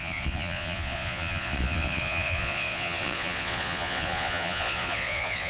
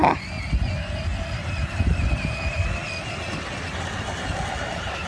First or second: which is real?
second